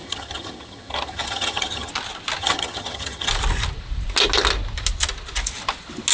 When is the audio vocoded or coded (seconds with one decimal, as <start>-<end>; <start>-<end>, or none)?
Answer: 0.0-1.9; 2.4-3.3